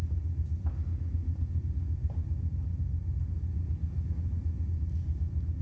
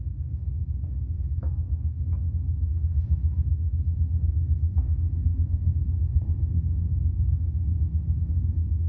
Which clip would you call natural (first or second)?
first